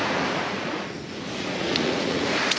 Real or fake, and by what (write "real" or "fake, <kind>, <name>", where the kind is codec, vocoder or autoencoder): fake, vocoder, Vocos